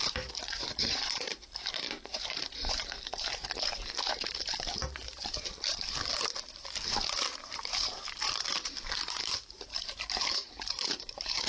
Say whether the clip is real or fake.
fake